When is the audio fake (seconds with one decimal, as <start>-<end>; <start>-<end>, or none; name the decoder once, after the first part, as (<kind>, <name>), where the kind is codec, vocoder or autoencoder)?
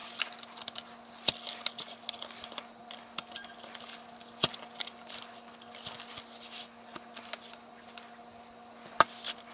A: none